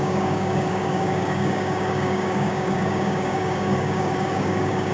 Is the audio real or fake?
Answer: fake